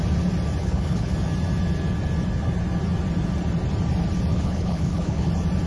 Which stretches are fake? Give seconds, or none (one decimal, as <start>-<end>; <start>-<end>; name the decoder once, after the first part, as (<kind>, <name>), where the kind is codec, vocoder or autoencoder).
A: 0.6-1.1 (codec, HILCodec); 4.3-5.3